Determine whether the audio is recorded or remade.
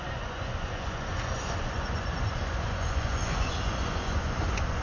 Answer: remade